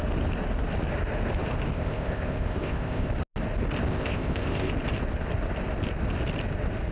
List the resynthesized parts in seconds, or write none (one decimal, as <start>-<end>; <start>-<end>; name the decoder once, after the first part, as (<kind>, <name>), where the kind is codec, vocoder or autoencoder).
1.7-3.1 (codec, ZipCodec); 3.9-4.7